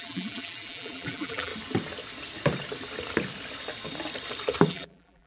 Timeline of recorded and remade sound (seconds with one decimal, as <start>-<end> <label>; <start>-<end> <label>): 0.0-1.5 remade; 1.5-4.7 recorded; 4.7-5.3 remade